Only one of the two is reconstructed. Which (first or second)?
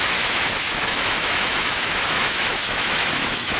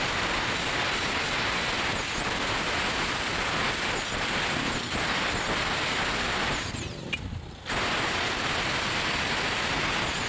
first